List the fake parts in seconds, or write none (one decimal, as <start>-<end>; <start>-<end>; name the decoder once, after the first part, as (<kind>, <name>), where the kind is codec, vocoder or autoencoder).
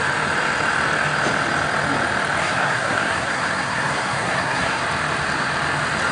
2.4-4.8 (codec, SNAC)